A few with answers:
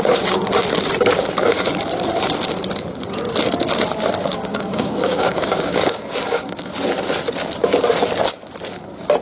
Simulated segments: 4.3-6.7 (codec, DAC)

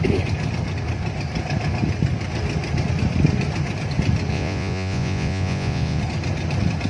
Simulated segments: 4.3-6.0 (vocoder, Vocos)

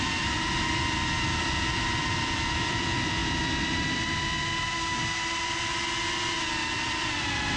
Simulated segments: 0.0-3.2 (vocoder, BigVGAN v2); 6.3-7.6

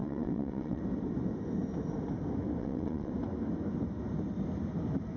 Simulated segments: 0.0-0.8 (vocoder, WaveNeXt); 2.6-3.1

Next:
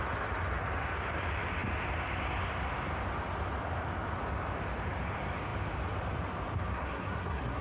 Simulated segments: 6.7-7.6 (codec, SNAC)